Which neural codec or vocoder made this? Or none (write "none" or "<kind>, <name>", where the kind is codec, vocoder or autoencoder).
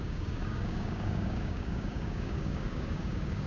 codec, DAC